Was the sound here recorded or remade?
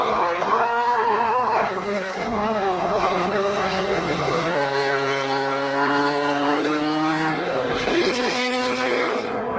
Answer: remade